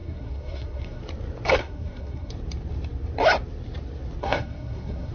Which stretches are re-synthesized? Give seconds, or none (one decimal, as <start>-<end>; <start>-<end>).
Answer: 0.0-1.0; 1.6-2.3; 4.2-5.1